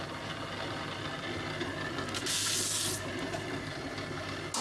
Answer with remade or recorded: recorded